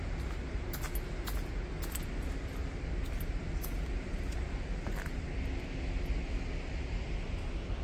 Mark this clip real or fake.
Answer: real